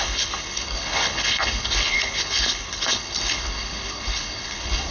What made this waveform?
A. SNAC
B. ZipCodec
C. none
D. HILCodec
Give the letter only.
D